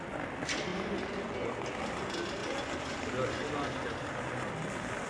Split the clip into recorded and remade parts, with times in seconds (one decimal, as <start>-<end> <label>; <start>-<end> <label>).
0.0-5.1 recorded